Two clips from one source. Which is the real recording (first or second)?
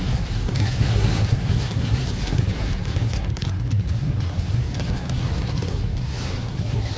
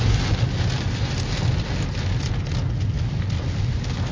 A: second